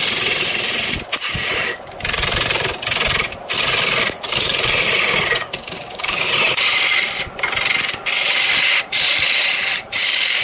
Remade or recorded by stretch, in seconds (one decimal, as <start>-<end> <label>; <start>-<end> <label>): 0.0-5.4 recorded; 5.4-6.3 remade; 6.3-10.4 recorded